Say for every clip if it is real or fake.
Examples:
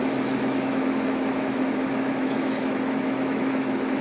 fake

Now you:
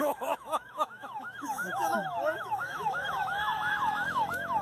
fake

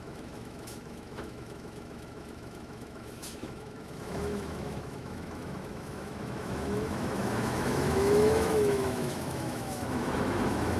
fake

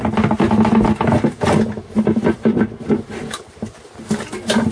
real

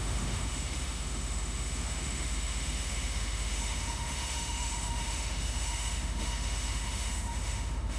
fake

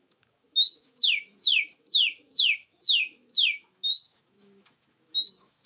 fake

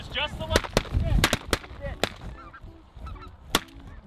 real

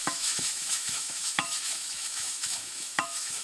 fake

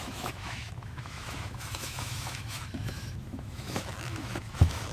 fake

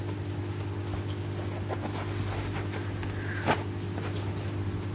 real